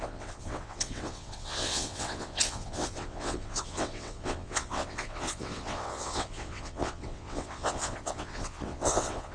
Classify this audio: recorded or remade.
remade